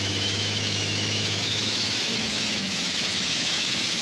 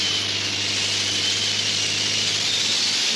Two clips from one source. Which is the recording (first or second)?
second